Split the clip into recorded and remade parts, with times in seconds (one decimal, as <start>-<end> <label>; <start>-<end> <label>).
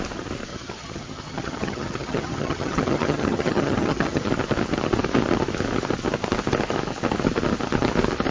0.0-0.5 recorded; 0.5-4.3 remade; 4.3-8.3 recorded